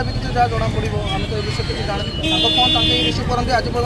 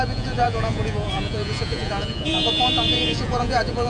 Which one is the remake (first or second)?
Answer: second